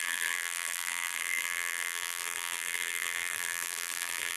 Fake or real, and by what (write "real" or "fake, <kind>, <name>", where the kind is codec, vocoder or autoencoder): fake, vocoder, BigVGAN v2